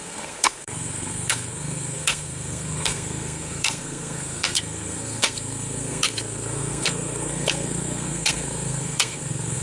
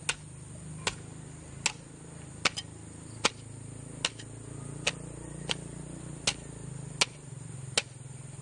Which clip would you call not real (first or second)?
first